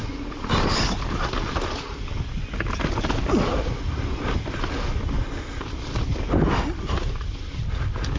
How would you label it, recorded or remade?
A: recorded